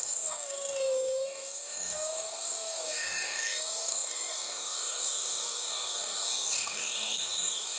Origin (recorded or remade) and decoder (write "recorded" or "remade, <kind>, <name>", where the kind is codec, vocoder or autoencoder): remade, codec, DAC